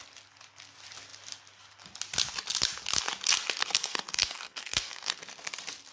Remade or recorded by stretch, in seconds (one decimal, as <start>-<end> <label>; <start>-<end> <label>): 0.0-3.6 recorded; 3.6-5.1 remade; 5.1-5.9 recorded